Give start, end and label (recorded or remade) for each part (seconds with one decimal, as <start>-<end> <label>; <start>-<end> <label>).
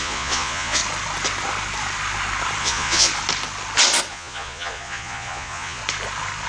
0.0-0.8 remade; 0.8-2.6 recorded; 2.6-3.1 remade; 3.1-4.1 recorded; 4.1-5.8 remade; 5.8-6.5 recorded